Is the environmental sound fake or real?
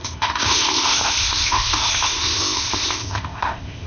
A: fake